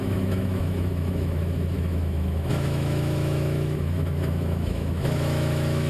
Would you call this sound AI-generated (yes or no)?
yes